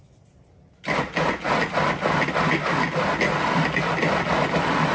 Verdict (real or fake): real